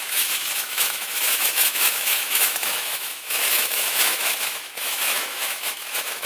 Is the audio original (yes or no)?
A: no